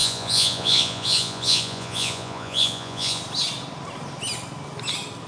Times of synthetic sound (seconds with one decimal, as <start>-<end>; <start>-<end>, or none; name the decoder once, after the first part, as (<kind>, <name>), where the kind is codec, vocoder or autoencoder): 0.0-3.2 (vocoder, Vocos)